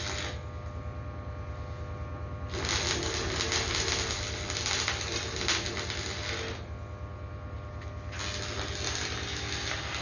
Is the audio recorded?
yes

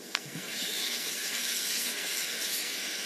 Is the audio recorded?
no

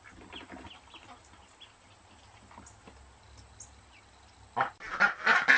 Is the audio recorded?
yes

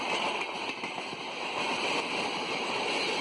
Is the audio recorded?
yes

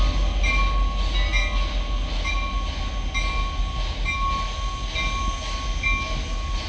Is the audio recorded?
yes